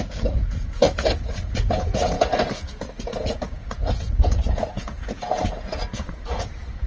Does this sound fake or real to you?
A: fake